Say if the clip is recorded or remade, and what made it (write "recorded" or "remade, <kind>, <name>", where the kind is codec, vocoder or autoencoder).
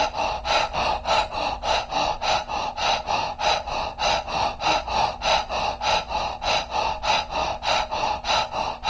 recorded